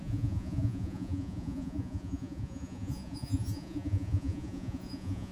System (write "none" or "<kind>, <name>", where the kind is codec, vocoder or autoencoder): vocoder, Vocos